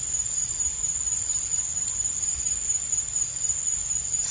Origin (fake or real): real